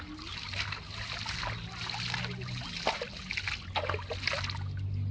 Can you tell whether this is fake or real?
real